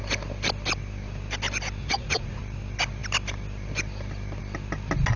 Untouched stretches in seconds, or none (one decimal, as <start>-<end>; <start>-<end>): 0.0-1.8; 2.4-5.2